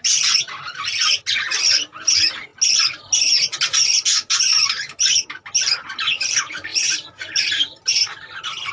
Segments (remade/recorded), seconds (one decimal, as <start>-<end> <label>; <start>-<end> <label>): 0.0-6.7 recorded; 6.7-8.0 remade; 8.0-8.7 recorded